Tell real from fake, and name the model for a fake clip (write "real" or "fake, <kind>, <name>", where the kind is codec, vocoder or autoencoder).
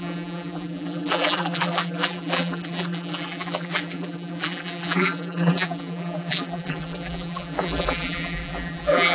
fake, vocoder, BigVGAN v2